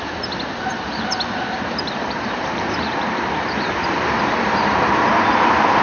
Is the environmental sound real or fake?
fake